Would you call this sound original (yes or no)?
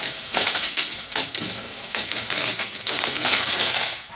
no